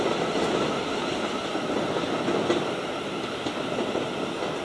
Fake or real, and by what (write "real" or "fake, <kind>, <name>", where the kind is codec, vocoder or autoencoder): real